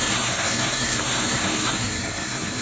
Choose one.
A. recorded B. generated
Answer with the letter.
B